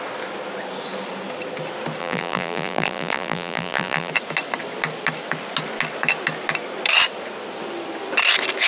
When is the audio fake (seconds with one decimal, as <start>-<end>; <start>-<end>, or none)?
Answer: 2.0-4.1